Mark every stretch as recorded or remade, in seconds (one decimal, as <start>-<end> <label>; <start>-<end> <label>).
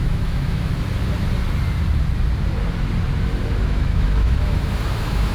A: 0.0-0.7 remade; 0.7-3.6 recorded; 3.6-5.3 remade